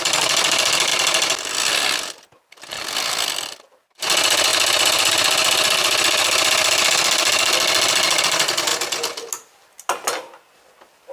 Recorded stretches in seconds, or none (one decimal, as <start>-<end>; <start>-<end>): 0.0-11.1